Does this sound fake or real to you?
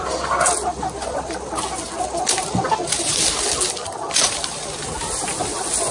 real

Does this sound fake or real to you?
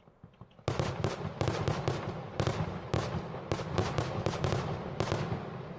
real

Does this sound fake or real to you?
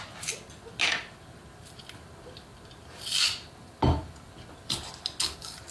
real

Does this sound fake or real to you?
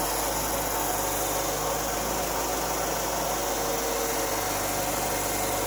real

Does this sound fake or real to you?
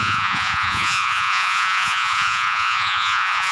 fake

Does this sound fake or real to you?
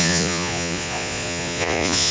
fake